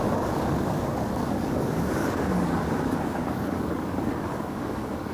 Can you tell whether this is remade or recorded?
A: remade